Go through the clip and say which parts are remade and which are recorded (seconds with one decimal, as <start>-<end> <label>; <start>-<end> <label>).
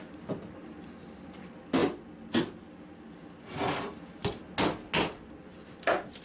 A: 0.0-6.2 recorded